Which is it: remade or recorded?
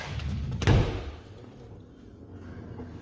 recorded